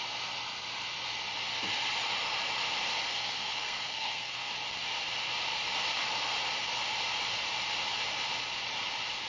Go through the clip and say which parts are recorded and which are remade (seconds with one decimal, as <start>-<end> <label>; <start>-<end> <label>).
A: 0.0-3.1 recorded; 3.1-4.5 remade; 4.5-9.3 recorded